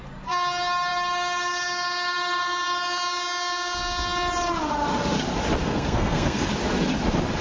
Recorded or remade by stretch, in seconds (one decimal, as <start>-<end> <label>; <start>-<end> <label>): 0.0-5.6 recorded; 5.6-6.5 remade; 6.5-7.4 recorded